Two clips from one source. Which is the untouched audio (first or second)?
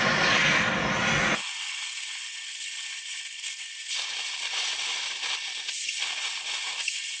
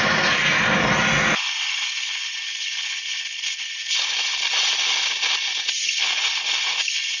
second